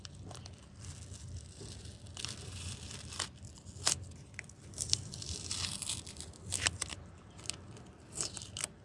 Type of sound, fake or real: fake